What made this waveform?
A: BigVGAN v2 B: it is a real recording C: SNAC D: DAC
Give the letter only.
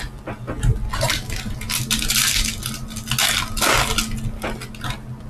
B